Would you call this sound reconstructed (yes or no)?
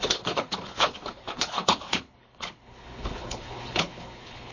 yes